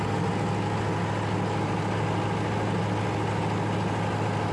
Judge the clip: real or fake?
real